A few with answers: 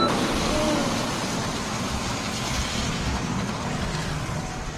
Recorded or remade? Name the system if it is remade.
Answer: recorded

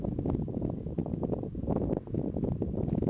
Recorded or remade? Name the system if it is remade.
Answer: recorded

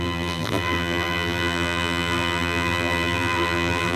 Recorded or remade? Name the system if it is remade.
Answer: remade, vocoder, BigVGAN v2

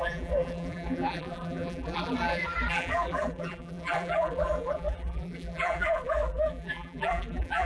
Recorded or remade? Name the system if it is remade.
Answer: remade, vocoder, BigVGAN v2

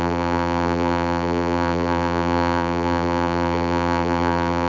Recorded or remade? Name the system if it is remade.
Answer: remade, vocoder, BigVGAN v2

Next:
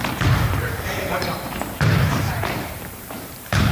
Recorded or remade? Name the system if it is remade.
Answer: remade, vocoder, BigVGAN v2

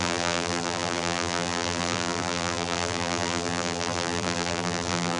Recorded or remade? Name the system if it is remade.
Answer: remade, vocoder, BigVGAN v2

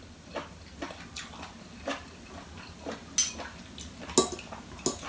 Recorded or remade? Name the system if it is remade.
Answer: recorded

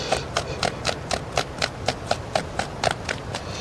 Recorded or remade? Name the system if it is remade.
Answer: recorded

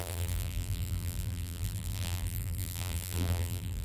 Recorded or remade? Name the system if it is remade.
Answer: remade, vocoder, BigVGAN v2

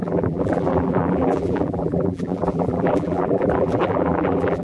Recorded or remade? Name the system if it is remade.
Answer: remade, vocoder, BigVGAN v2